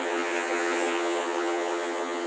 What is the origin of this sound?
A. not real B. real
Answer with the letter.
A